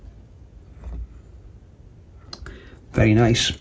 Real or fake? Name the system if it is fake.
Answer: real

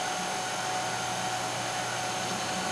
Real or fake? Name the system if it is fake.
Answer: real